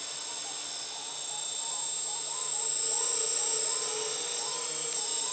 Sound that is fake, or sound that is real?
real